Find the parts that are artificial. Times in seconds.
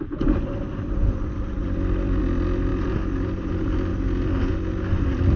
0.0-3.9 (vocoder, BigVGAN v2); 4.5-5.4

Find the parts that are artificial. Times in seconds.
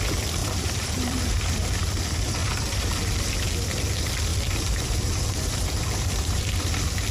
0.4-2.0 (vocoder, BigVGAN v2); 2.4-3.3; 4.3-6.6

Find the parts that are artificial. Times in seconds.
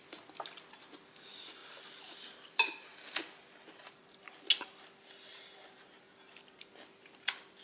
5.3-6.7 (vocoder, BigVGAN v2)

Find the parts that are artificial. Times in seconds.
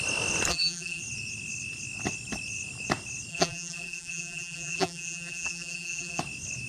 0.5-1.0 (vocoder, BigVGAN v2); 3.3-6.2